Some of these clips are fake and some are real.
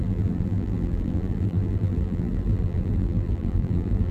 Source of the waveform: fake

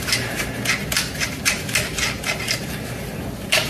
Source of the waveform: real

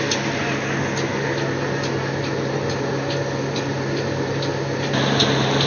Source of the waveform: real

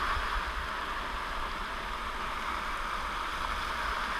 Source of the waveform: real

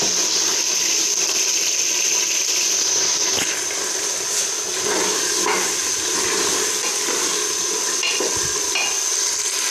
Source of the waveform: real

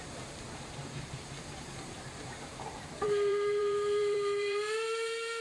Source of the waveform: fake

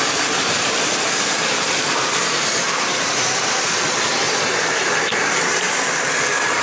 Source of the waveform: fake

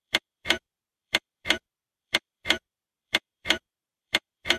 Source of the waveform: fake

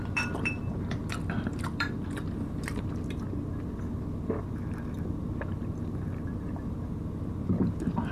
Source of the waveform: fake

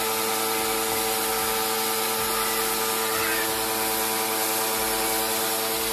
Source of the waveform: real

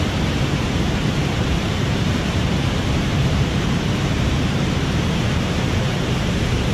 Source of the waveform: fake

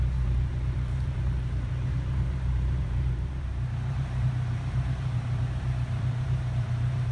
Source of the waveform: fake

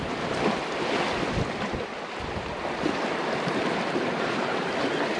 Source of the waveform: fake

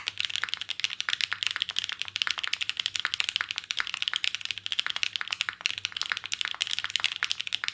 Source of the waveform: real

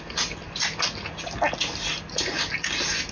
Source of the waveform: real